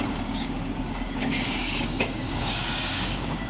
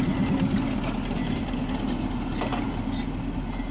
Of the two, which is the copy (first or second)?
first